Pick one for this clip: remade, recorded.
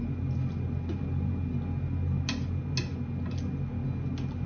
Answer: recorded